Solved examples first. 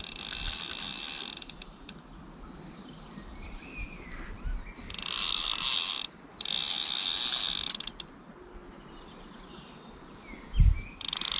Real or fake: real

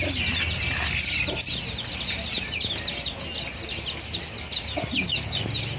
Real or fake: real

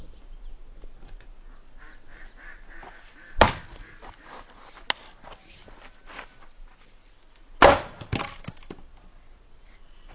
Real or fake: real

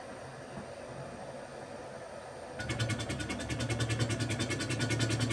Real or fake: real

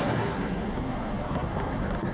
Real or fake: fake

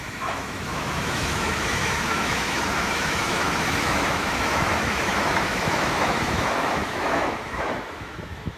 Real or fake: fake